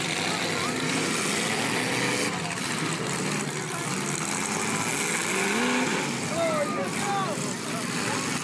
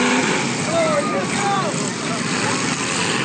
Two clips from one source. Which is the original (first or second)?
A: first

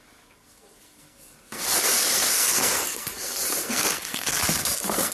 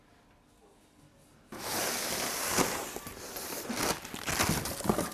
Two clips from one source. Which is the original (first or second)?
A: second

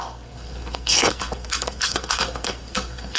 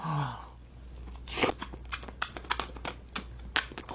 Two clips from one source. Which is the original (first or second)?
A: second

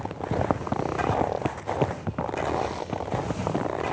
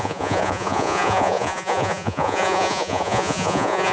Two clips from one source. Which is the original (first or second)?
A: first